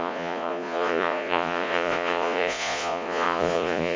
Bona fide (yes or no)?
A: no